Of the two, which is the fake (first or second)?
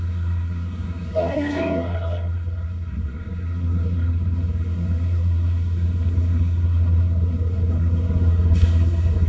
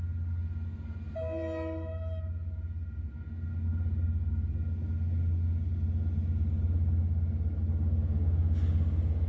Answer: first